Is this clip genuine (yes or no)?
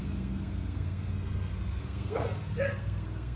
no